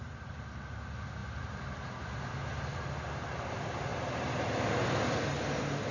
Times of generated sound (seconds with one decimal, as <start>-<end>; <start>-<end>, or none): none